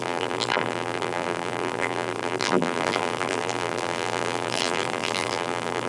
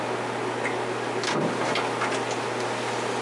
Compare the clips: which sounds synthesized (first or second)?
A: first